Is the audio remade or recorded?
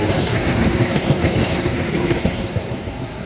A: remade